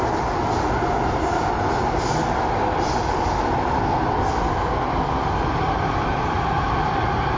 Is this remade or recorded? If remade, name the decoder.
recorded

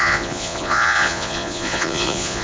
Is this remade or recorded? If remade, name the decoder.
remade, vocoder, Vocos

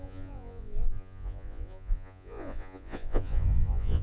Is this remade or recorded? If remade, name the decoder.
remade, vocoder, Vocos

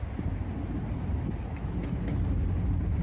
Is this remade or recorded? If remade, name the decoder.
recorded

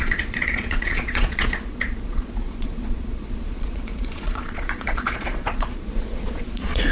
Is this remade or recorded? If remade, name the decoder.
remade, vocoder, Vocos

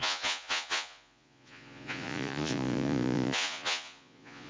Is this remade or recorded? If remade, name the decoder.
remade, vocoder, Vocos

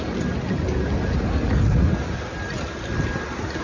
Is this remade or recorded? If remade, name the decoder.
recorded